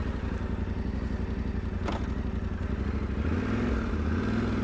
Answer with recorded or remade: recorded